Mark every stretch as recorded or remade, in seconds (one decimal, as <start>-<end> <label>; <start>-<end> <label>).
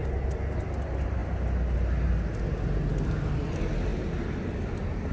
0.0-5.1 recorded